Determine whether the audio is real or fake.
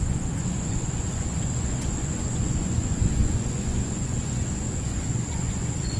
fake